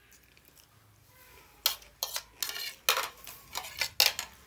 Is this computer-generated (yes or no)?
no